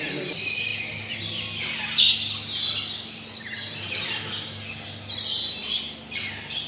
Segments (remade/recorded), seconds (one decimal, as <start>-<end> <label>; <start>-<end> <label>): 0.0-6.7 recorded